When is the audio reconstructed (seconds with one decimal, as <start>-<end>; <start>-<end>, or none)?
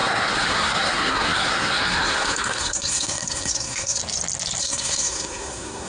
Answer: 0.0-4.0; 4.6-5.9